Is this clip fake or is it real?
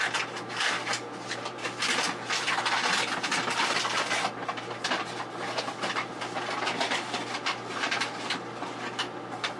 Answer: real